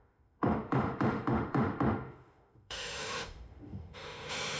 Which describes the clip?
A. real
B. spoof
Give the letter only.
B